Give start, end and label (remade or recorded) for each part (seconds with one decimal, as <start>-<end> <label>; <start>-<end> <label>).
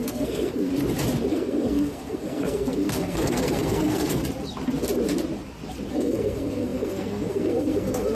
0.0-0.7 remade; 0.7-1.3 recorded; 1.3-4.2 remade; 4.2-5.9 recorded; 5.9-8.1 remade